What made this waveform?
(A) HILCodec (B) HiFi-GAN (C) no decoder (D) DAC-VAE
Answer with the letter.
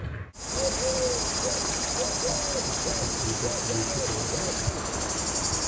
C